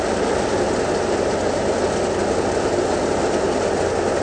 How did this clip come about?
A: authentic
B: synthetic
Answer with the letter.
A